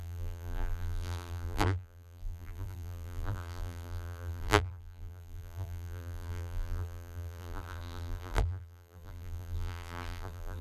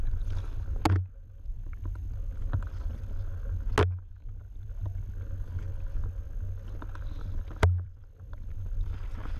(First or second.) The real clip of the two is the second